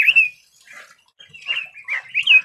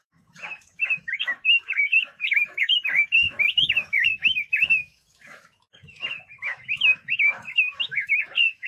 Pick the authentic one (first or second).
first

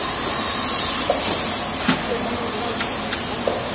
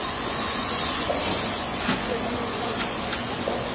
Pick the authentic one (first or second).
first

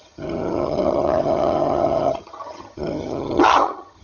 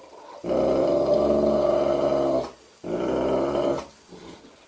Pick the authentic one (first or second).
second